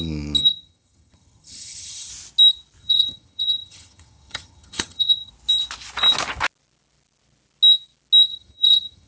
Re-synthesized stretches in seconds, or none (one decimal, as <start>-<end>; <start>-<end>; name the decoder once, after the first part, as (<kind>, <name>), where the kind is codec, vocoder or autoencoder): 0.4-2.1 (vocoder, HiFi-GAN); 2.8-5.3; 8.3-9.1